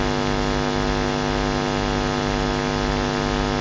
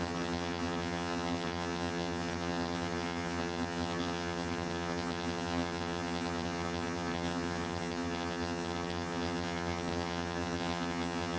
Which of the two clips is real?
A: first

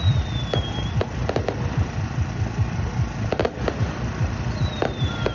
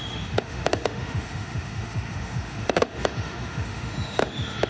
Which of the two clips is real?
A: first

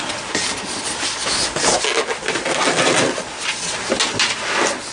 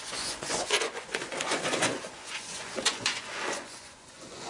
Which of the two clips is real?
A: first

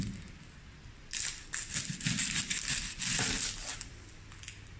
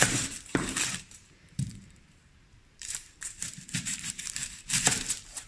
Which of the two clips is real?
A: first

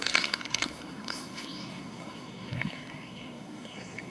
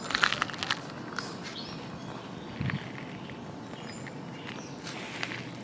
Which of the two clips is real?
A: second